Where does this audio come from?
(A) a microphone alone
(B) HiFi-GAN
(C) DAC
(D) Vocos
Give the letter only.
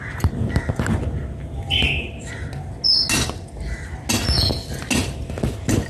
A